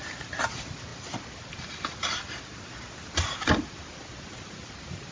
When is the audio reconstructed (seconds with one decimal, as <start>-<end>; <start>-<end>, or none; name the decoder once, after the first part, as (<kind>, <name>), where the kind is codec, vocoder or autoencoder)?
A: none